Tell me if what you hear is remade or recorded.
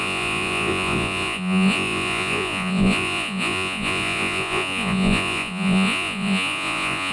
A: remade